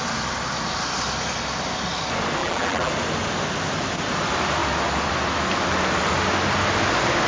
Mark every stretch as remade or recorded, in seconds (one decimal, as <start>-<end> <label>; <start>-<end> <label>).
0.0-2.4 recorded; 2.4-2.9 remade; 2.9-7.3 recorded